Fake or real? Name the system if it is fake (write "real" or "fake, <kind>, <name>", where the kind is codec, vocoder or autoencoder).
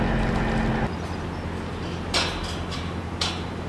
real